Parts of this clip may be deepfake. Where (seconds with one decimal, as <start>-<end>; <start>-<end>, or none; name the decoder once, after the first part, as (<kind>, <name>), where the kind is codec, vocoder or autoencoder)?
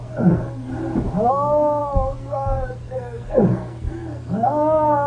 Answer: 0.0-0.7 (codec, SNAC); 1.3-5.1